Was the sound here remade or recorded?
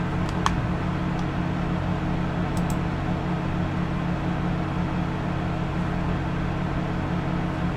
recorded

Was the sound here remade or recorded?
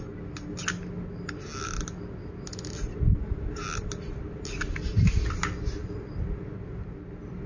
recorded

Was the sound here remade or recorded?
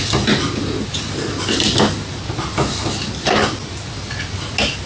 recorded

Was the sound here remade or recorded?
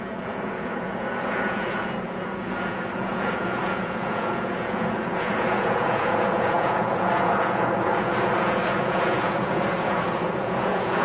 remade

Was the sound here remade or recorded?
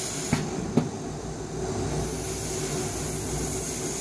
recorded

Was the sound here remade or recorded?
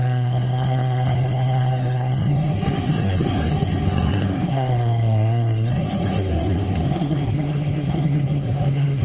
remade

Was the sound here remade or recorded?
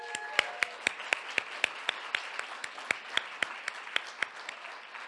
recorded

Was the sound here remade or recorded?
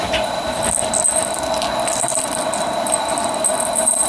recorded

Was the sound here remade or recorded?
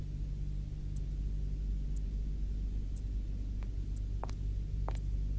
recorded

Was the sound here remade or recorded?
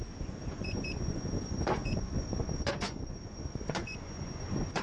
remade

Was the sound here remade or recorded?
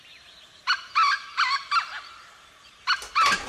recorded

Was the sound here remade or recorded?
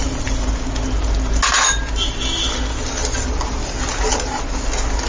recorded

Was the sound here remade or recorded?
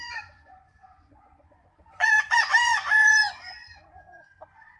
remade